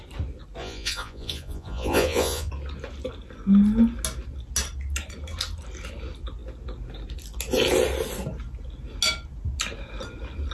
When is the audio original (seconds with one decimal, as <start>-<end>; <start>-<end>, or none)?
0.0-0.6; 2.5-10.5